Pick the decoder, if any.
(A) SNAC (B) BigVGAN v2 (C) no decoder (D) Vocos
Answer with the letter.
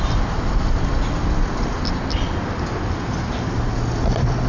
C